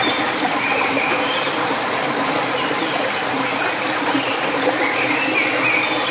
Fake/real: real